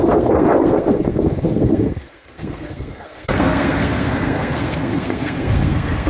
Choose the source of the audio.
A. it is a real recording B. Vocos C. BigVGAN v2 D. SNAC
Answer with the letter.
D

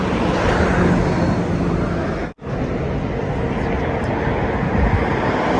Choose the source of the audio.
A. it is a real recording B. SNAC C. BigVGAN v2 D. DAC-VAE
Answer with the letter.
A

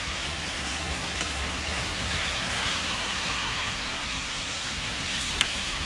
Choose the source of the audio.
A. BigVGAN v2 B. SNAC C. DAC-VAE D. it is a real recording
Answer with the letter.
B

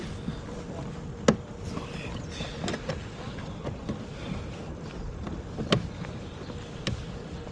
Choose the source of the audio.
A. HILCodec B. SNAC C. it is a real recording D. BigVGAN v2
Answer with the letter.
C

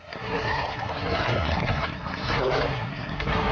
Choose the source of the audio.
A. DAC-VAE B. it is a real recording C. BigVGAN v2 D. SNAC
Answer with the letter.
D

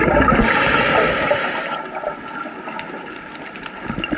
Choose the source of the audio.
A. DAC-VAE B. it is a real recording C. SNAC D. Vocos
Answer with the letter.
B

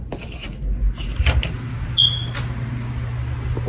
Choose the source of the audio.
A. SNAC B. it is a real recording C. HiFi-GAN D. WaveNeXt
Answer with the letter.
B